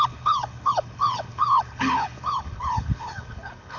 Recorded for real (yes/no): no